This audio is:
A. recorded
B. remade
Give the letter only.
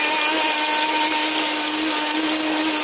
A